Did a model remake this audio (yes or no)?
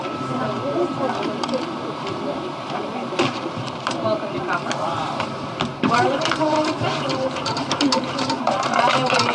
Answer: yes